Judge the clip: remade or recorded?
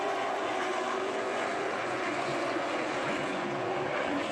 remade